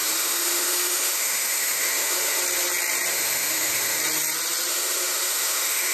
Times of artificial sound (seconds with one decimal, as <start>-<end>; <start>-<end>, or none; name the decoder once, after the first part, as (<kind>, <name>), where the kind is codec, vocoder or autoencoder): 0.0-2.4 (autoencoder, DAC-VAE); 3.1-4.0; 4.7-5.9